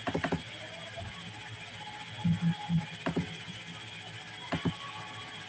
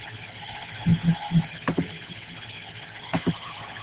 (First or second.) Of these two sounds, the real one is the first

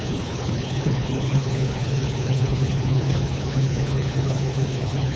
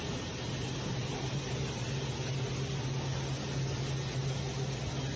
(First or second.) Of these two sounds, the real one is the second